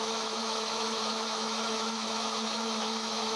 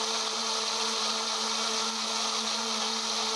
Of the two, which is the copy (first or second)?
first